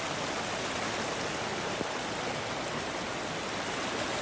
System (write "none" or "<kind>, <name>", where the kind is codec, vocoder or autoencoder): none